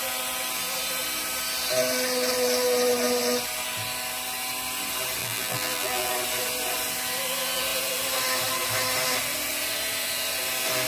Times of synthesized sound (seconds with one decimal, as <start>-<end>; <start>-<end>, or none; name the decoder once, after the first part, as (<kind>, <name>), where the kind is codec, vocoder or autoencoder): 5.2-6.1 (vocoder, BigVGAN v2)